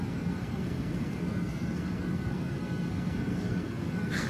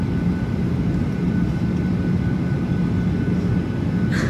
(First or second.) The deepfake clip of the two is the first